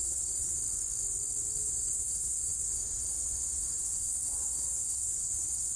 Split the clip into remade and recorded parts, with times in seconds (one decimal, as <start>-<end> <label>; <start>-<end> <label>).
0.0-0.6 remade; 0.6-1.6 recorded; 1.6-5.8 remade